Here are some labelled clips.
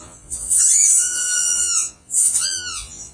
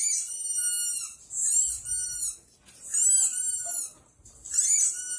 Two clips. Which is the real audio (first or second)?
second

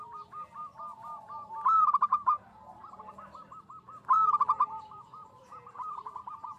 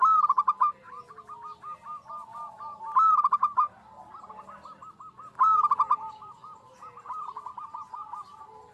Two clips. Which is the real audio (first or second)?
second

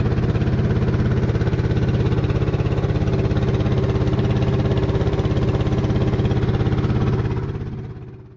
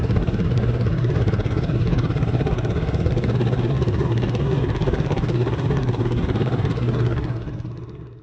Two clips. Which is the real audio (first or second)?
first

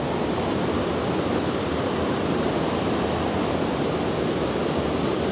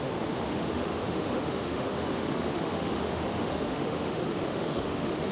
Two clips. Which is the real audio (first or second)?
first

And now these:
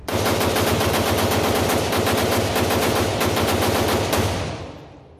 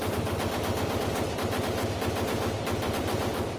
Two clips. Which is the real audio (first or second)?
first